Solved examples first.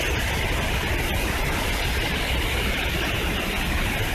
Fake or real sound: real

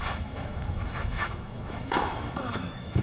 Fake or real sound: fake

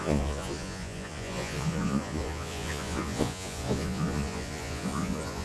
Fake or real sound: fake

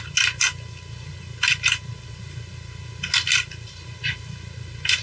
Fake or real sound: real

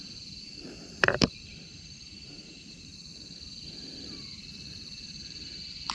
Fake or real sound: fake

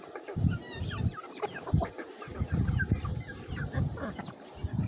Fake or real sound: fake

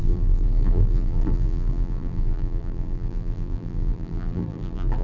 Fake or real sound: fake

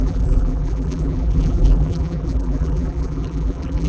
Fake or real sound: fake